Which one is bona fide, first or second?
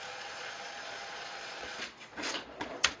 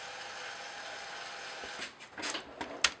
second